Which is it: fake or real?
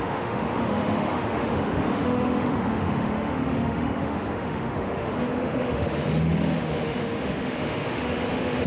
fake